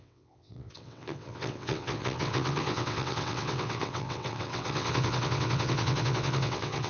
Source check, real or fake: fake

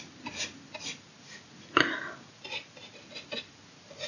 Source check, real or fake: real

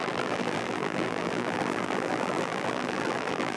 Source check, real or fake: fake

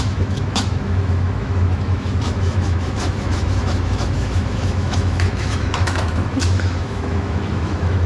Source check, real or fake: fake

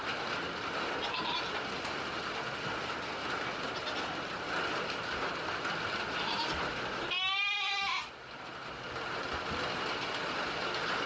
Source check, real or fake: real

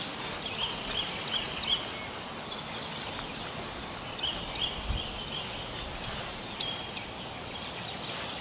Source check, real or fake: real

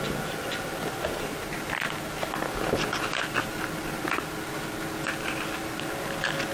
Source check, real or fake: real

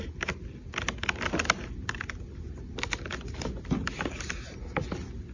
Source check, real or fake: real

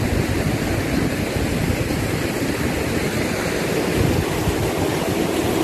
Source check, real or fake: real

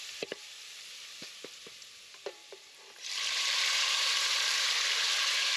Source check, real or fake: fake